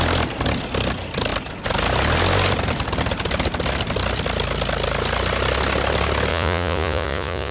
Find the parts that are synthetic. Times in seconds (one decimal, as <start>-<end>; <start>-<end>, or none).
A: 6.3-7.5